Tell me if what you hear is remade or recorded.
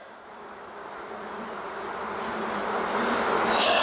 recorded